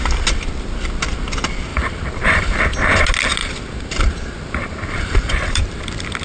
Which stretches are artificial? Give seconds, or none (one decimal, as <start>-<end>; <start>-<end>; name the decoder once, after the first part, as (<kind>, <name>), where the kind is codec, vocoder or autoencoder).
1.7-2.6 (vocoder, BigVGAN v2); 3.4-5.8